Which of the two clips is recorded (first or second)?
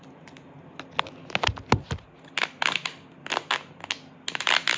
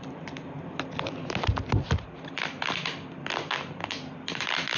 first